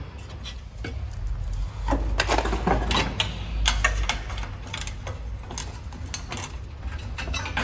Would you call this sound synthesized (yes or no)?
no